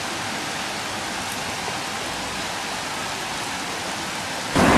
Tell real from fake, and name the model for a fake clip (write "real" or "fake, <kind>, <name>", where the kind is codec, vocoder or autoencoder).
real